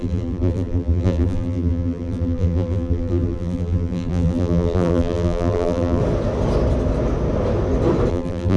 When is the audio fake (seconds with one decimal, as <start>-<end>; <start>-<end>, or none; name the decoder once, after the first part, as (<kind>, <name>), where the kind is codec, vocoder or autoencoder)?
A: 0.0-6.0 (vocoder, BigVGAN v2); 8.1-8.6

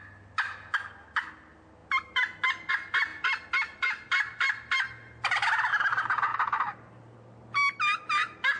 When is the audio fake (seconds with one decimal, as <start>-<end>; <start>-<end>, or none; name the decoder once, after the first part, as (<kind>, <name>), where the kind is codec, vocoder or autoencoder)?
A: none

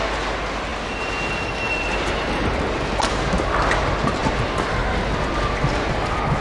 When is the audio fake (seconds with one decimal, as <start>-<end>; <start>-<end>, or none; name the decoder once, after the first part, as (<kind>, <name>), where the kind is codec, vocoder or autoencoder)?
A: none

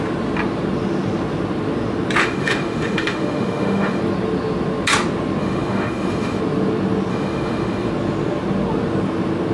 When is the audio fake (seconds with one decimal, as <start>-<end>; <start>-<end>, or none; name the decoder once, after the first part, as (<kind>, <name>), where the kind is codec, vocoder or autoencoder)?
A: 2.2-4.0 (autoencoder, DAC-VAE); 5.4-6.4; 7.1-7.9